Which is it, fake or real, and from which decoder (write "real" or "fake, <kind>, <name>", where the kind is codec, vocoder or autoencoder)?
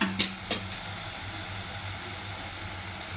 real